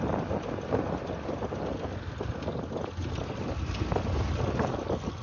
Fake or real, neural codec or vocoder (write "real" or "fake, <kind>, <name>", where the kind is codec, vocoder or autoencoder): real